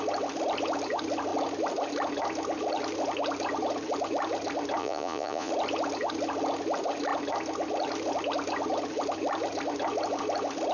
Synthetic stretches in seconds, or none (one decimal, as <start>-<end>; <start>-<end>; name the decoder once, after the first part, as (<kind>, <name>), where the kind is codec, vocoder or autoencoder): 4.8-5.5 (vocoder, Vocos)

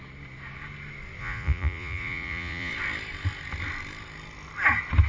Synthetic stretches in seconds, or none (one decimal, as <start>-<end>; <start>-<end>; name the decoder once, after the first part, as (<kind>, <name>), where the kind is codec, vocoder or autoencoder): 1.2-2.7 (vocoder, Vocos)

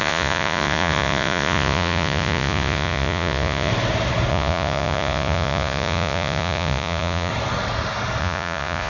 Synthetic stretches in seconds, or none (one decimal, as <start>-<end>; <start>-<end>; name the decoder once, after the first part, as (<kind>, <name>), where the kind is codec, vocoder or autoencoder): 0.0-3.7 (vocoder, Vocos); 4.3-7.3; 8.2-8.9

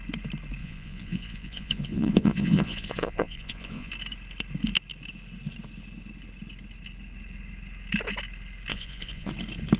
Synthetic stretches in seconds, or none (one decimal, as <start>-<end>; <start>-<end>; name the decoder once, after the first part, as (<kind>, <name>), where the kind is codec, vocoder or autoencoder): 0.6-3.9 (vocoder, Vocos); 8.7-9.3

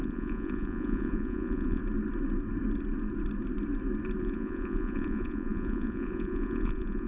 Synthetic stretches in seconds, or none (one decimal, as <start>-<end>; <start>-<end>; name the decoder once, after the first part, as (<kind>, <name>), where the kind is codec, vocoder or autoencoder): 0.0-1.8 (vocoder, Vocos); 4.2-7.1

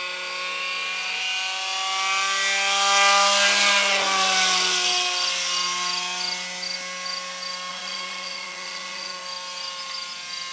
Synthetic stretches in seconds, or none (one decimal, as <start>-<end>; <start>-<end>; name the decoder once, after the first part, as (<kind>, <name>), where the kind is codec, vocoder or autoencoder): 7.7-9.2 (vocoder, Vocos)

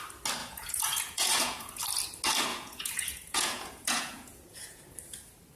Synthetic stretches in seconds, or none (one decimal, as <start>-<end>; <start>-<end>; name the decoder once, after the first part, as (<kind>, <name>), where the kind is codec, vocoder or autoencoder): 0.4-1.8 (vocoder, Vocos); 2.5-4.8